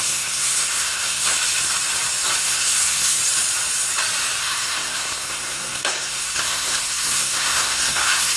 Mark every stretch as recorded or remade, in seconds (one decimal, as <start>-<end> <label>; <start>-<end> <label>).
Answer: 0.0-1.3 remade; 1.3-2.4 recorded; 2.4-3.2 remade; 3.2-4.4 recorded; 4.4-8.4 remade